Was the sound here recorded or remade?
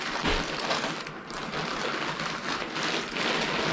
recorded